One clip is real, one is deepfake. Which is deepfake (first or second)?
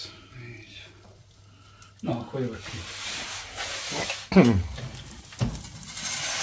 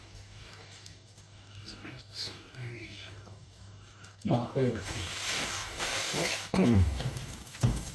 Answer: second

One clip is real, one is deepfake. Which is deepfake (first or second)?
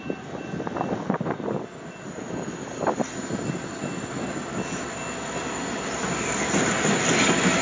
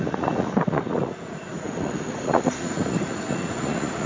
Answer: second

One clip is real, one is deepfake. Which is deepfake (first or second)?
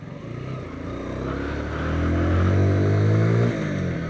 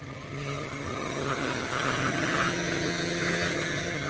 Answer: second